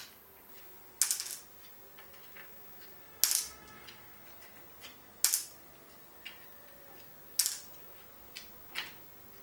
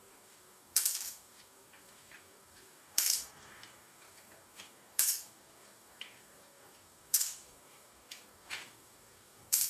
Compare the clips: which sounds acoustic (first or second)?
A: first